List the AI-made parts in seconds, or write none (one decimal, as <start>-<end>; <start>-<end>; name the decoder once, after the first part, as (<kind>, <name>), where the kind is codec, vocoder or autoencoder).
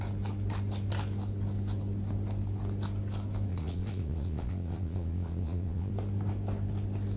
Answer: 3.5-5.9 (vocoder, Vocos)